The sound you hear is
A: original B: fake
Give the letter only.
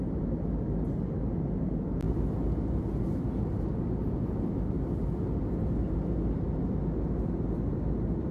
A